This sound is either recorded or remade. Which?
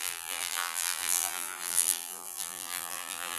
remade